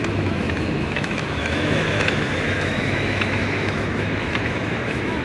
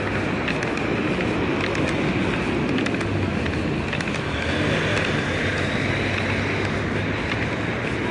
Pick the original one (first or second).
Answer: second